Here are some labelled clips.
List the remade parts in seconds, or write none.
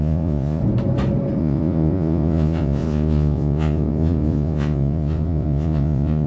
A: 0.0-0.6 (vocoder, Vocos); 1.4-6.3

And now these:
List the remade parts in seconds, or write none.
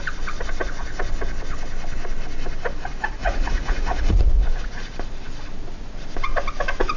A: 3.2-4.4 (vocoder, Vocos)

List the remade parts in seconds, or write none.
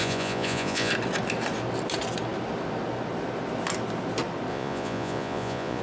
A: 0.0-0.9 (vocoder, Vocos); 4.5-5.8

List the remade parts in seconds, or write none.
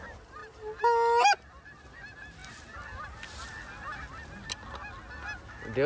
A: none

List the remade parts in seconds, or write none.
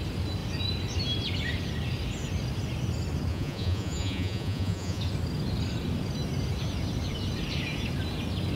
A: 3.3-5.0 (vocoder, Vocos)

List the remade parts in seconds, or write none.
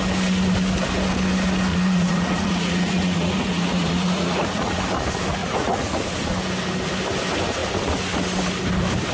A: 1.7-4.8 (vocoder, Vocos); 5.4-6.0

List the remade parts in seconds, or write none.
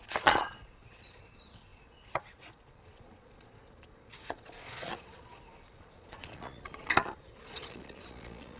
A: 0.0-8.6 (vocoder, Vocos)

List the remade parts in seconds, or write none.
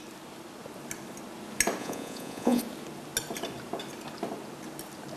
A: 1.8-2.6 (vocoder, Vocos)